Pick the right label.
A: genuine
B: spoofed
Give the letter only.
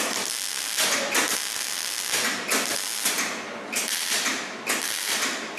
A